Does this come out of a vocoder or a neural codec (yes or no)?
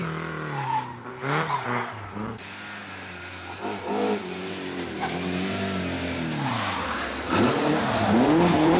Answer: yes